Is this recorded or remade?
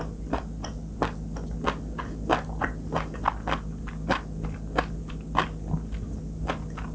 recorded